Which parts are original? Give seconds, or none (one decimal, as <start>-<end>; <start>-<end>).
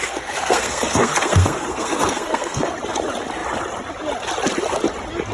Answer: 2.7-5.3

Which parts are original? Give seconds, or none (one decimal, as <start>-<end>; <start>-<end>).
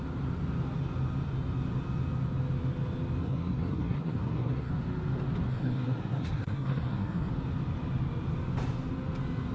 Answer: 0.0-3.2; 4.7-5.5; 7.3-9.5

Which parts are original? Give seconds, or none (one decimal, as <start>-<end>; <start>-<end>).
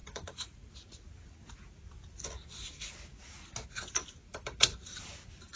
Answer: 0.7-5.6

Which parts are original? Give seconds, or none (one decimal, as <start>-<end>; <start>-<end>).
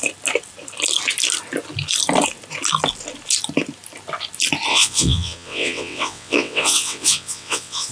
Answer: 0.0-4.7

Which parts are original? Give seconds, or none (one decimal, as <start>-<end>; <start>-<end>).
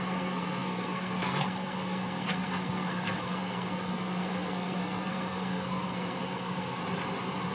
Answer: 6.8-7.5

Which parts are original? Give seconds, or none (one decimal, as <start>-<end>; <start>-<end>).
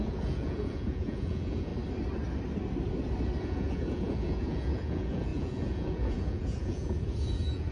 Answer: 1.7-3.4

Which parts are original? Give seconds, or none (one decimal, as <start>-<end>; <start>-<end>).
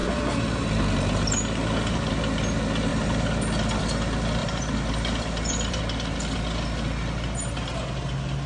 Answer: 0.0-2.9; 3.8-4.4; 5.8-8.5